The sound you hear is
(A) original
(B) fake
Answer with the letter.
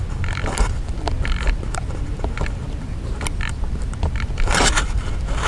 B